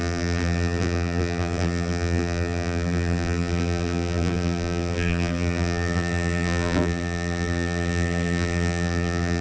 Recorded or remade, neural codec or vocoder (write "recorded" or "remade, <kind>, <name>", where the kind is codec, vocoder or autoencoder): remade, vocoder, BigVGAN v2